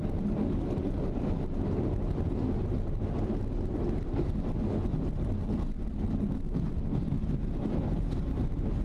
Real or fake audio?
real